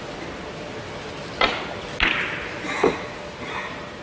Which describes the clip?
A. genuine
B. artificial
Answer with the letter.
A